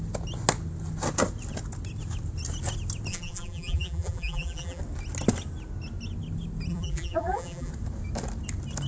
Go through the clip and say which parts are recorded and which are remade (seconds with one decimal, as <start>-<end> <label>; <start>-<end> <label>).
0.0-3.1 recorded; 3.1-4.8 remade; 4.8-6.7 recorded; 6.7-7.7 remade; 7.7-8.9 recorded